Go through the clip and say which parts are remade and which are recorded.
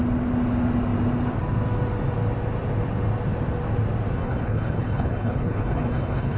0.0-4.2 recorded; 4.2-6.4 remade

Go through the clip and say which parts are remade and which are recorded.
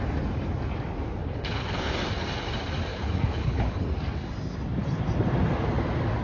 0.0-1.2 recorded; 1.2-1.9 remade; 1.9-2.9 recorded; 2.9-3.8 remade; 3.8-6.2 recorded